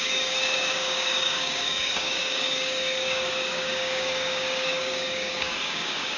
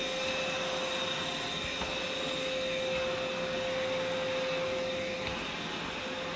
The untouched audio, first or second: second